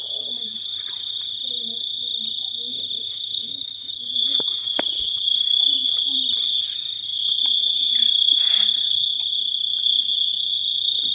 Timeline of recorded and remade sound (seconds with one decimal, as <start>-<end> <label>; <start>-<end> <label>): 0.0-2.7 recorded; 2.7-3.9 remade; 3.9-11.1 recorded